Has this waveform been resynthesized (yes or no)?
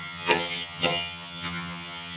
yes